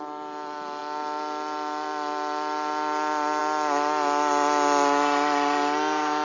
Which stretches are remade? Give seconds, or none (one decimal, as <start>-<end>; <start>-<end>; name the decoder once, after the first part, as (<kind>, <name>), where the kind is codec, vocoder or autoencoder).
none